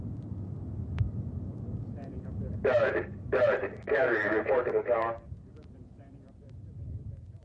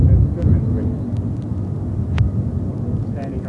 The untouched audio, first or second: second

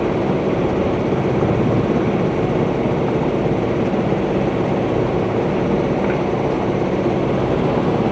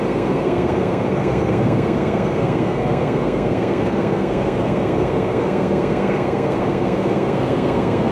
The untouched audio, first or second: first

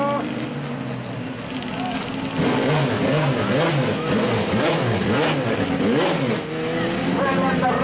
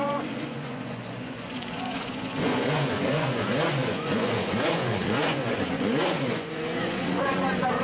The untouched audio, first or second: first